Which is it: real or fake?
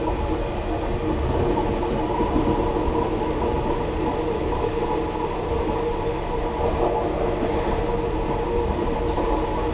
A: real